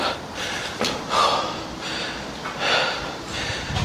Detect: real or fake real